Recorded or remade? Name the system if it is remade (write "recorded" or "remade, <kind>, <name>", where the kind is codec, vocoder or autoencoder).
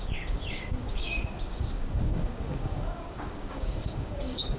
remade, codec, DAC